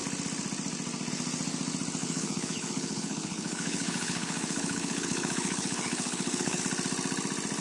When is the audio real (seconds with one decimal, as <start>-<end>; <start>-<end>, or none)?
0.0-2.0; 6.6-7.6